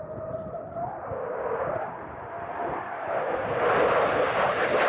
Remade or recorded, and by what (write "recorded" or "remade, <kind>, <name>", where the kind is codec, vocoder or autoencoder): recorded